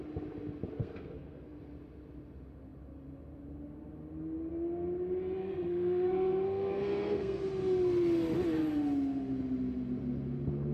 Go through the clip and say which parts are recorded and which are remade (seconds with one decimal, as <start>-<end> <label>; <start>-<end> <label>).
0.0-0.8 recorded; 0.8-1.6 remade; 1.6-5.4 recorded; 5.4-7.4 remade; 7.4-10.7 recorded